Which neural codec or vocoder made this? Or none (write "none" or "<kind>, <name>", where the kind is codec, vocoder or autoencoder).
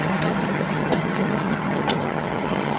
vocoder, HiFi-GAN